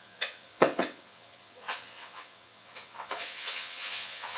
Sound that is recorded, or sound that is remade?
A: remade